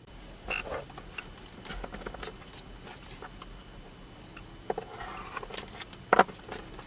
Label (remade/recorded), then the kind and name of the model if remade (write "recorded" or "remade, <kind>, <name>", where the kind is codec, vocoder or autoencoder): recorded